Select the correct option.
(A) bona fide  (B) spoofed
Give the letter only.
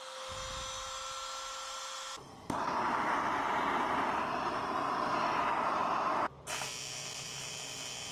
A